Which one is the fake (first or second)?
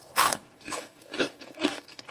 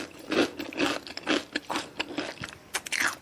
first